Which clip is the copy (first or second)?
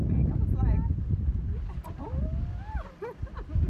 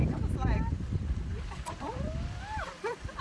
second